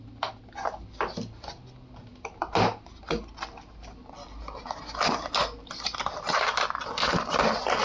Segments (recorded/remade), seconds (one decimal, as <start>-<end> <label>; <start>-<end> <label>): 0.0-7.8 recorded

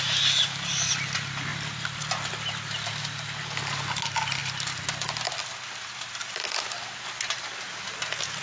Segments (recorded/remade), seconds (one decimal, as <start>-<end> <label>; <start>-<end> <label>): 0.0-1.5 recorded; 1.5-2.3 remade; 2.3-8.4 recorded

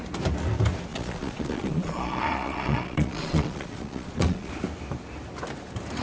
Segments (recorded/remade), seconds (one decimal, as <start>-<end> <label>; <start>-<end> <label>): 0.0-0.9 recorded; 0.9-4.5 remade; 4.5-6.0 recorded

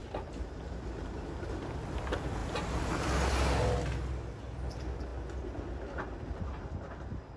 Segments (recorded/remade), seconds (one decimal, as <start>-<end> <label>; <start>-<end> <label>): 0.0-7.4 recorded